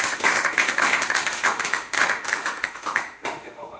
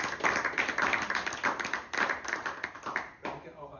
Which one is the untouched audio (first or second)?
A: second